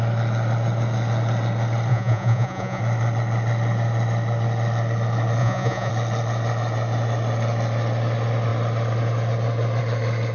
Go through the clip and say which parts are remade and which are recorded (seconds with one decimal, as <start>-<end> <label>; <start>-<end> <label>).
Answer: 0.0-1.9 recorded; 1.9-2.8 remade; 2.8-5.4 recorded; 5.4-5.9 remade; 5.9-10.3 recorded